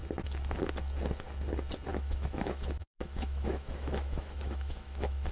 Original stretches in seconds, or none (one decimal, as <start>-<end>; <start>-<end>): 0.0-1.9